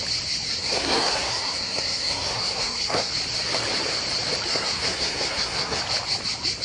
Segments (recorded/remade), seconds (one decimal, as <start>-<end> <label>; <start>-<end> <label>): 0.0-0.5 recorded; 0.5-3.1 remade; 3.1-4.5 recorded; 4.5-5.8 remade; 5.8-6.6 recorded